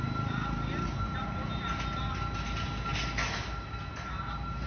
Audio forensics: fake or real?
real